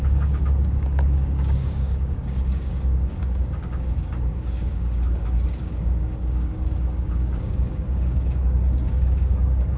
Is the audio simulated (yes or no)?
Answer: yes